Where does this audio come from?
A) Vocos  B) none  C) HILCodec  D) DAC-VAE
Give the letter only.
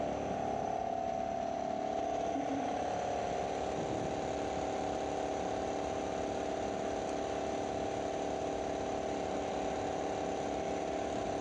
B